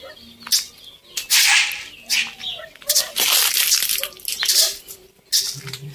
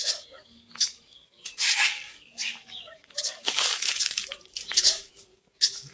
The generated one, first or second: second